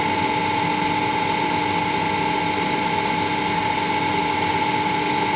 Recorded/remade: recorded